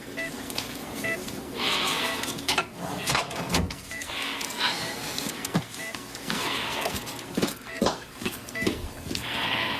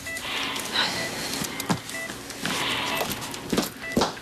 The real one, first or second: second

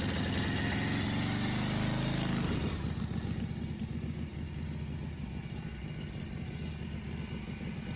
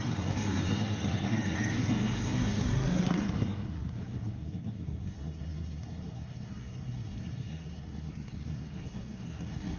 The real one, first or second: first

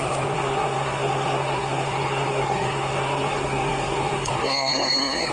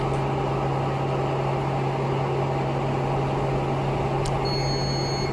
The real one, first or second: second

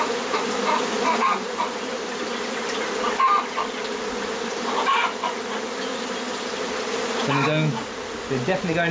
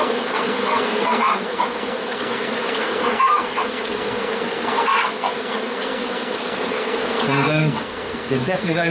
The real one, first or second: first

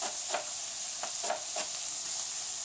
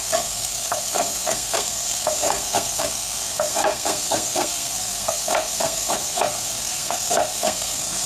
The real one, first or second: first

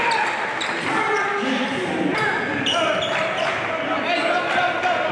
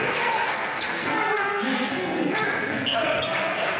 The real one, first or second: first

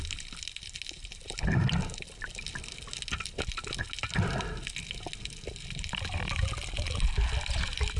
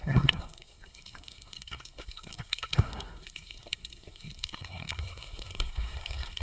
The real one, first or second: first